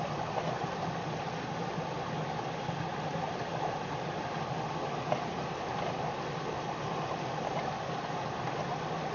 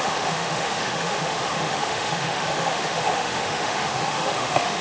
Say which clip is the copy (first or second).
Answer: second